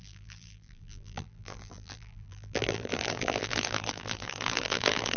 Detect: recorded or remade remade